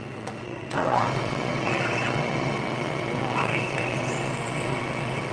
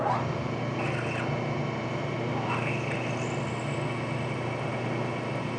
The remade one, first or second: first